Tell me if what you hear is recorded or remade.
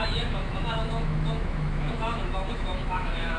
remade